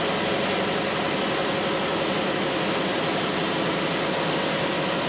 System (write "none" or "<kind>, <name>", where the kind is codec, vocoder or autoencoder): none